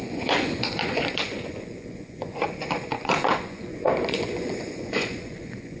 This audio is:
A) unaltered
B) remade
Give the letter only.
B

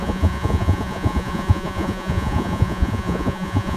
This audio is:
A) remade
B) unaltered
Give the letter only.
A